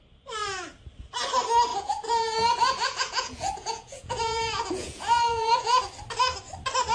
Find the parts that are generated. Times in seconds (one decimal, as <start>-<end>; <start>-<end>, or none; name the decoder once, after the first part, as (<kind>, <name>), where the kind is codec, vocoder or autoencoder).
1.7-5.8 (vocoder, Vocos)